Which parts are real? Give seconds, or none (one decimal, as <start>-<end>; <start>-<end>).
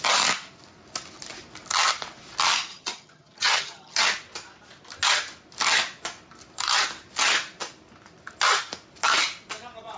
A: 0.0-2.7; 4.0-10.0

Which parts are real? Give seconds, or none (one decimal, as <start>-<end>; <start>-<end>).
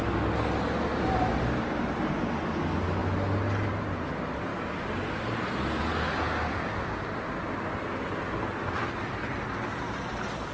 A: 0.0-10.5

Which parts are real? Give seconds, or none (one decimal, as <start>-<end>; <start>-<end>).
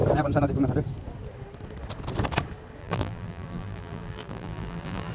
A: 0.0-2.8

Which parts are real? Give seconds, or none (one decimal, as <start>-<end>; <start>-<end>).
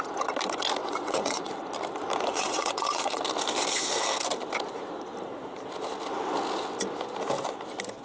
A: 0.0-0.8; 1.5-2.3; 3.2-8.0